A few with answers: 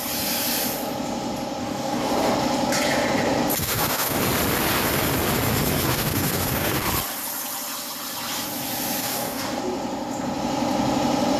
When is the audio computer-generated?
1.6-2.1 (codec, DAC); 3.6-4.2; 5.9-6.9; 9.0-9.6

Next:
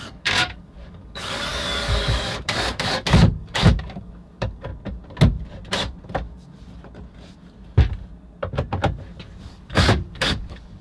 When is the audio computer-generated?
0.0-4.7 (codec, DAC); 9.4-10.8

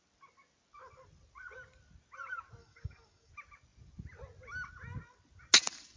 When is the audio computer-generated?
2.6-3.3 (codec, DAC)

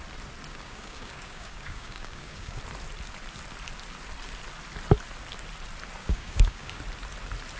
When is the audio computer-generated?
0.5-2.6 (codec, DAC); 6.0-6.8

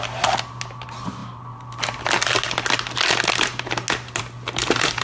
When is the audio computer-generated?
none

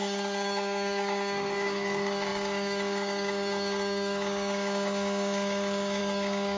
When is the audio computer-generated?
0.0-6.6 (codec, DAC)